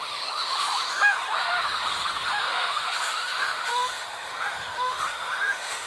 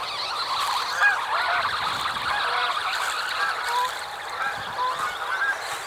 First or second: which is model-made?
first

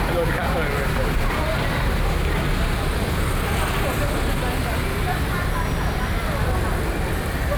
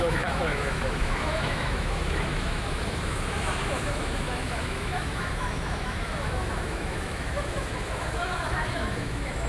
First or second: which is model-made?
second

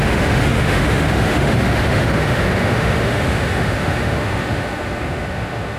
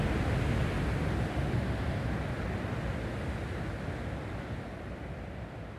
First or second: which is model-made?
first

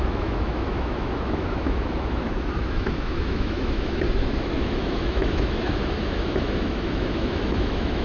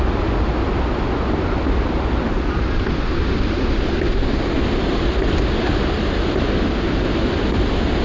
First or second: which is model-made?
first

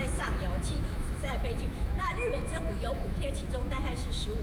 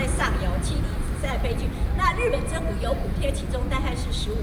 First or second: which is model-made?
first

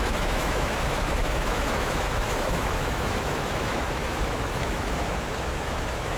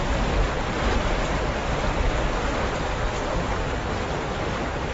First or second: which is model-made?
first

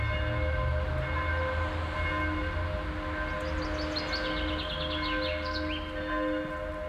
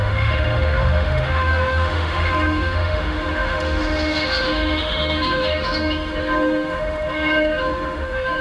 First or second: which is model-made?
second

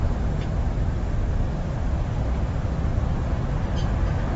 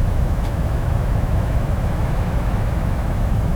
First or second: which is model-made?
second